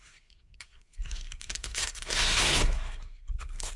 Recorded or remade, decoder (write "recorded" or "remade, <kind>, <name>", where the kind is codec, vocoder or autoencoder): remade, codec, SNAC